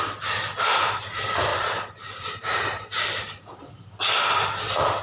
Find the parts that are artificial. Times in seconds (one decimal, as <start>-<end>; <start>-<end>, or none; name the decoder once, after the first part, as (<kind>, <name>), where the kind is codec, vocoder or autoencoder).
1.5-3.7 (vocoder, BigVGAN v2)